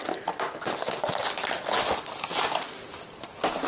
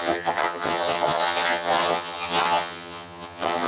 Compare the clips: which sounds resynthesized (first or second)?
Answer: second